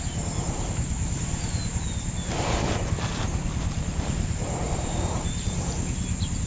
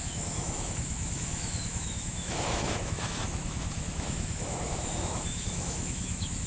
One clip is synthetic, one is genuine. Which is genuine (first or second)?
first